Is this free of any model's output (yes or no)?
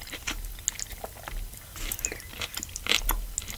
yes